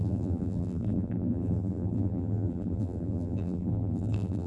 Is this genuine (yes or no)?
no